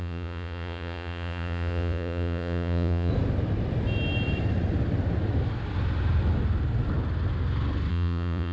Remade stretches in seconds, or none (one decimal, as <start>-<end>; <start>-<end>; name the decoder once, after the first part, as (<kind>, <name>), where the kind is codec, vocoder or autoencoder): 0.0-3.1 (vocoder, Vocos); 7.9-8.5